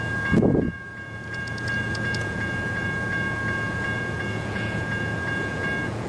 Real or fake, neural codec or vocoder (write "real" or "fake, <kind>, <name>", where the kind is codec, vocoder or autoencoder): fake, vocoder, Vocos